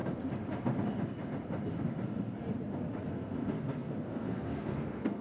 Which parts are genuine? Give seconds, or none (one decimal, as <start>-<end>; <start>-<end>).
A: 0.0-3.1